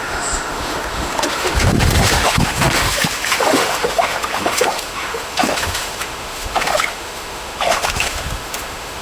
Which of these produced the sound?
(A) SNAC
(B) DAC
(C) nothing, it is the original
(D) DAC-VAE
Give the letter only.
D